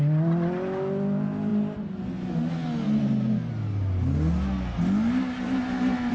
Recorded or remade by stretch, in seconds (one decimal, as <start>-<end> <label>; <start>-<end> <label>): 0.0-6.1 recorded